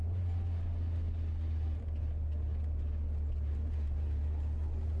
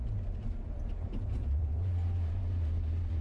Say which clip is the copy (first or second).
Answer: second